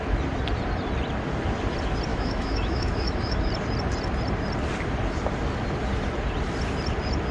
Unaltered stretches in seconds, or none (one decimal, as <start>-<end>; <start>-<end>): 0.0-2.1; 3.5-7.3